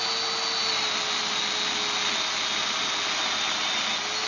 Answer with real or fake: real